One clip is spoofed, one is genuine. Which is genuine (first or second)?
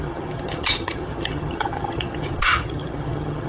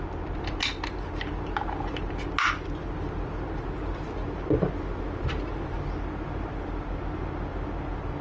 second